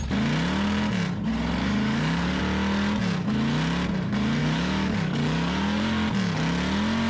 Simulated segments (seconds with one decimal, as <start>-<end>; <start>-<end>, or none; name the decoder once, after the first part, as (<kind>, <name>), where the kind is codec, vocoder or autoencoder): 1.6-2.4 (codec, DAC); 4.4-5.8